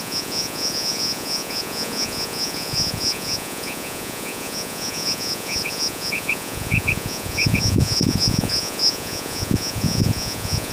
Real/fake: fake